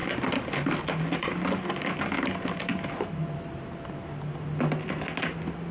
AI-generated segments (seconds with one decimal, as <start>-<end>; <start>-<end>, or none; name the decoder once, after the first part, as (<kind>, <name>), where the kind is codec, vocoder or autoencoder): none